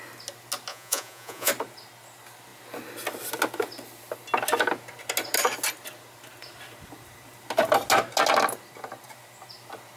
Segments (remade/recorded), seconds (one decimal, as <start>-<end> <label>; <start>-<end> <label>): 0.0-0.7 recorded; 0.7-1.5 remade; 1.5-10.0 recorded